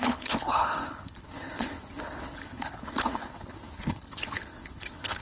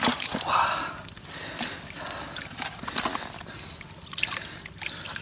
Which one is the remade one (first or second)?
first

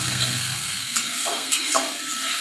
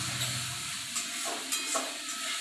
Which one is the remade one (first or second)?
first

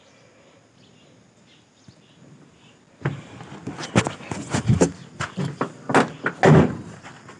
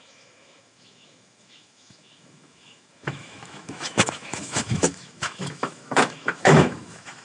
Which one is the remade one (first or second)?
second